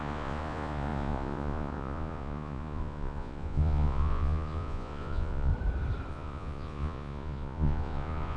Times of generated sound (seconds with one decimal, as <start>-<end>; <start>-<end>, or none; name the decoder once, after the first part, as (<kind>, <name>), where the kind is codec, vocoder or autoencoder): 0.0-5.5 (vocoder, Vocos); 6.1-8.4